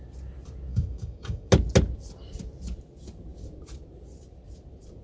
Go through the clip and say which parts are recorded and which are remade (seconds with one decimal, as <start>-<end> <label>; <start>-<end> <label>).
0.0-0.7 recorded; 0.7-1.5 remade; 1.5-5.0 recorded

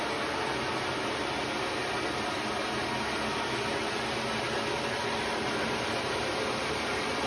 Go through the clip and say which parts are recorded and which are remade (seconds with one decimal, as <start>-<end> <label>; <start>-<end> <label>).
0.0-7.3 recorded

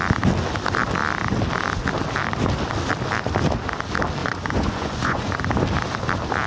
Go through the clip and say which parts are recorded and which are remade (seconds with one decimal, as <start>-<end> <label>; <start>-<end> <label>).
0.0-4.2 recorded; 4.2-5.4 remade; 5.4-6.5 recorded

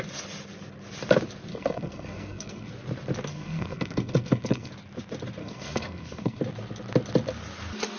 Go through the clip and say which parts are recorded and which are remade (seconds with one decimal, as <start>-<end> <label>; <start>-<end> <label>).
0.0-1.5 recorded; 1.5-2.7 remade; 2.7-3.3 recorded; 3.3-4.7 remade; 4.7-5.4 recorded; 5.4-6.4 remade; 6.4-8.0 recorded

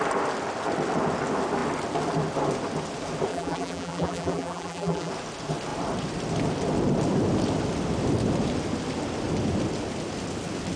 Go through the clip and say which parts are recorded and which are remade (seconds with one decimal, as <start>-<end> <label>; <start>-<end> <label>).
0.0-3.3 recorded; 3.3-5.1 remade; 5.1-10.8 recorded

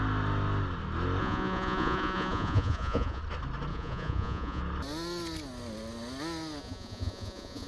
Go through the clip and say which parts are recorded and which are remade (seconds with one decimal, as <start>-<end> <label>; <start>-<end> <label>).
0.0-1.2 recorded; 1.2-3.2 remade; 3.2-3.7 recorded; 3.7-4.6 remade; 4.6-6.6 recorded; 6.6-7.7 remade

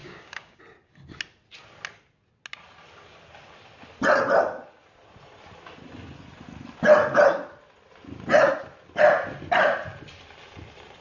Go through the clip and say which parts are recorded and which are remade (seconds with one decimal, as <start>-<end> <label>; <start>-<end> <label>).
0.0-0.6 remade; 0.6-11.0 recorded

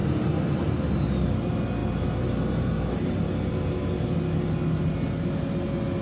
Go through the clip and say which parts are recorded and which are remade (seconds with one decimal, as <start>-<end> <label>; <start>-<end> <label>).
0.0-6.0 recorded